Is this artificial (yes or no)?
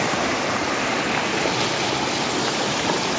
no